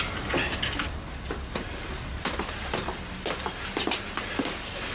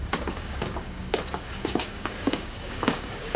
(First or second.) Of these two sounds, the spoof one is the second